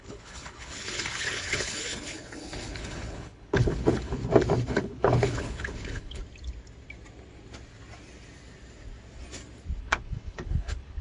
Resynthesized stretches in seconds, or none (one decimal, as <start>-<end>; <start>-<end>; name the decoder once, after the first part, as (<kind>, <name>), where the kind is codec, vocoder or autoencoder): 0.0-4.2 (codec, HILCodec); 4.7-6.2; 9.8-11.0

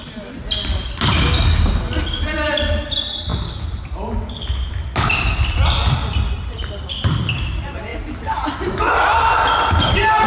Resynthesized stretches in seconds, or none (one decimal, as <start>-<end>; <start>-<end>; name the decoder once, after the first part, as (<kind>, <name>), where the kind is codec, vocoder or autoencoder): none